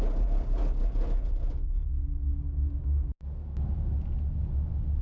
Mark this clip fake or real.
real